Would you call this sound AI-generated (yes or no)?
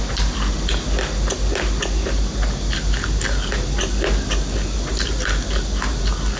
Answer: no